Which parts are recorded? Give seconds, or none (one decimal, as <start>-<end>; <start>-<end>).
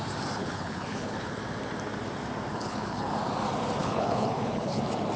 0.0-0.4; 1.4-2.5; 3.1-3.8; 4.8-5.2